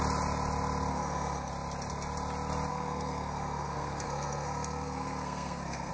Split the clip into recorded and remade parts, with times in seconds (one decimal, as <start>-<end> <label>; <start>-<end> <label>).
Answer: 0.0-0.9 recorded; 0.9-1.5 remade; 1.5-2.7 recorded; 2.7-5.9 remade